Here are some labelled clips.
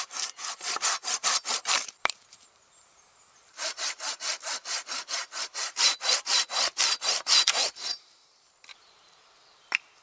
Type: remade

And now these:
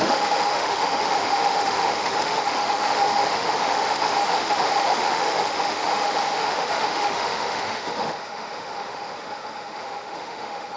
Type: remade